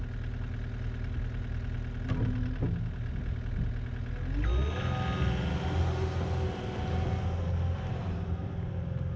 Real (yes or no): yes